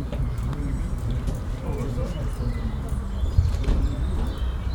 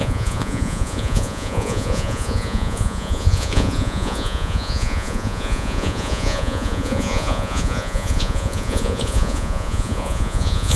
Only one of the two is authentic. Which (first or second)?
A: first